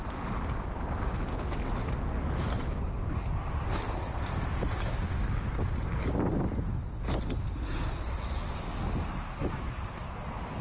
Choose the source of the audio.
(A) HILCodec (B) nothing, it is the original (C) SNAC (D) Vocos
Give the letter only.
B